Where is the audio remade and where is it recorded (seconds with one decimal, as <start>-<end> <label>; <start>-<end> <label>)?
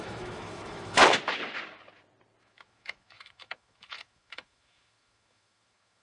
0.0-1.0 remade; 1.0-2.4 recorded; 2.4-6.0 remade